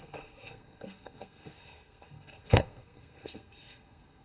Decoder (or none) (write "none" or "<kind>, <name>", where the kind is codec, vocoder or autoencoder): codec, SNAC